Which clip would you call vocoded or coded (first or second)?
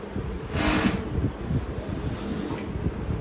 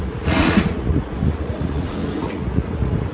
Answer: second